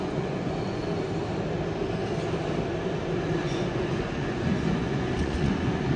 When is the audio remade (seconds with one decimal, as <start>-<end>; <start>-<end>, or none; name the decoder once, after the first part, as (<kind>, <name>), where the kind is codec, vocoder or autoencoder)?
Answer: 0.0-0.8 (vocoder, Vocos); 3.4-6.0